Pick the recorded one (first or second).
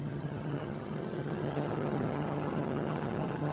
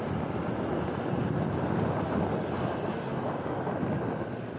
second